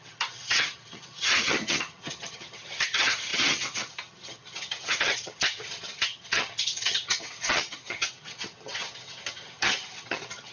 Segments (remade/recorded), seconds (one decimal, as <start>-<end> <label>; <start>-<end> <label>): 0.0-10.5 remade